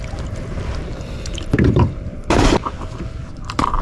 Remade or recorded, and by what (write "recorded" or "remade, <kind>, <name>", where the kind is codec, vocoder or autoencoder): remade, vocoder, BigVGAN v2